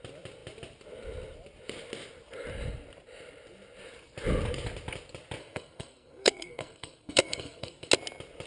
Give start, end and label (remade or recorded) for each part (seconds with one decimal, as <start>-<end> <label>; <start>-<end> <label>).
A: 0.0-5.4 recorded; 5.4-7.9 remade; 7.9-8.5 recorded

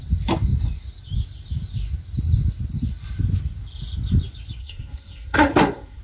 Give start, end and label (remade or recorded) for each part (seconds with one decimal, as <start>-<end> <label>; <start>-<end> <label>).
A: 0.0-4.6 recorded; 4.6-6.0 remade

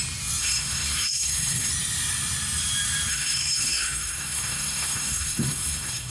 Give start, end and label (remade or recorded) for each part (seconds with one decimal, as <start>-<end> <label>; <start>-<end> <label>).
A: 0.0-0.4 recorded; 0.4-1.7 remade; 1.7-3.1 recorded; 3.1-6.1 remade

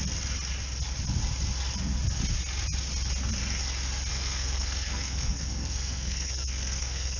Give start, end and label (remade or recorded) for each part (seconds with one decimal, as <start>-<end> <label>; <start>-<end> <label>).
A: 0.0-4.1 recorded; 4.1-7.2 remade

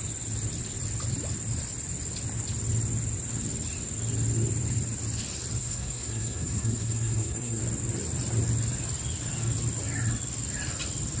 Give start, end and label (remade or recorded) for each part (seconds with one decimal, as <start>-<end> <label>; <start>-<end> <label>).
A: 0.0-5.6 recorded; 5.6-7.6 remade; 7.6-11.2 recorded

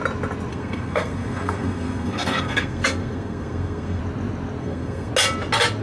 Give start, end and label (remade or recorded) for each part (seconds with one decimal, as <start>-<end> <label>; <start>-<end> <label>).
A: 0.0-0.5 recorded; 0.5-4.0 remade; 4.0-4.6 recorded; 4.6-5.1 remade; 5.1-5.8 recorded